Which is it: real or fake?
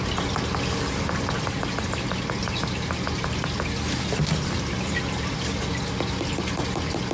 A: real